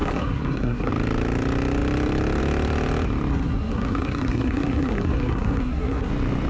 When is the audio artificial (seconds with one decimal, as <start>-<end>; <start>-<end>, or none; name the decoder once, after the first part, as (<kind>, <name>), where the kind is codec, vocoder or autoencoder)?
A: 0.0-0.9 (codec, SNAC); 3.3-6.1